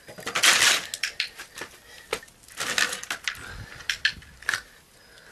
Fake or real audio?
real